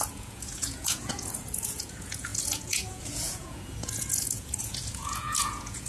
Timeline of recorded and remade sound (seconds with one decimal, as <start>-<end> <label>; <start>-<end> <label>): 0.0-5.9 remade